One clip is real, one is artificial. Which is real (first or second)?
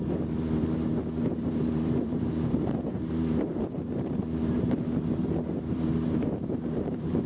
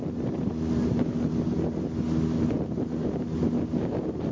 second